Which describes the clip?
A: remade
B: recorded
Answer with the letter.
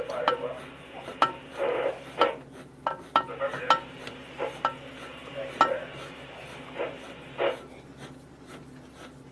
B